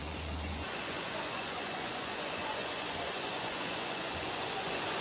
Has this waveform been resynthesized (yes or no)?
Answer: yes